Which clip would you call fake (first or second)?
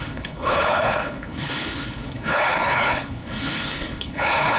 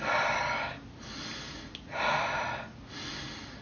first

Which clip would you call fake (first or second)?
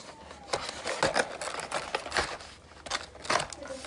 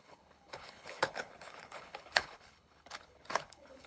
second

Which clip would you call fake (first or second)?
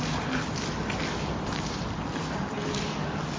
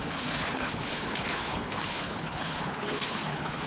second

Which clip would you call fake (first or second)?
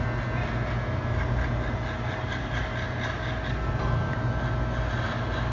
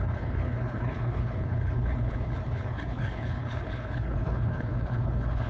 second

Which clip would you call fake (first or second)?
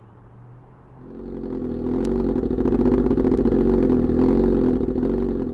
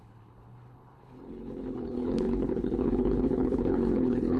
second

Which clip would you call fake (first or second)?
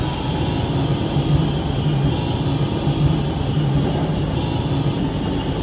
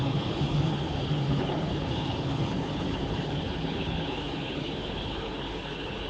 second